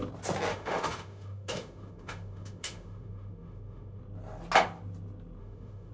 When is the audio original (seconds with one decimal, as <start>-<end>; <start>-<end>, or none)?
0.0-0.5; 4.0-5.4